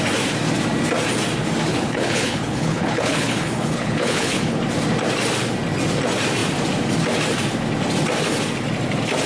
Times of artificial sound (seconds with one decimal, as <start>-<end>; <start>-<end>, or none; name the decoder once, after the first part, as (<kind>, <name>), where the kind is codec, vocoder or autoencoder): 1.7-4.6 (codec, HILCodec)